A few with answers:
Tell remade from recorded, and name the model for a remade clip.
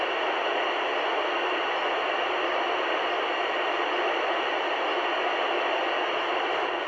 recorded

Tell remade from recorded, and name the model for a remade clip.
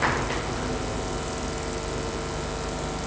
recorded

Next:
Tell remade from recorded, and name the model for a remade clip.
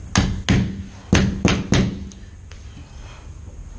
recorded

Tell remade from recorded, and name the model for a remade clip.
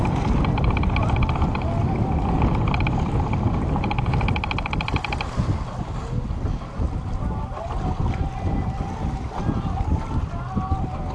recorded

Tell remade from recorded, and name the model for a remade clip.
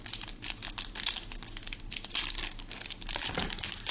recorded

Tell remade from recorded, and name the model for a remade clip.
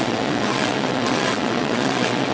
remade, vocoder, WaveNeXt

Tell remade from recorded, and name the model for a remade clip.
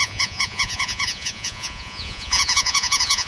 remade, vocoder, Vocos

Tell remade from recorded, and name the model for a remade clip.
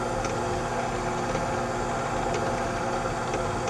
recorded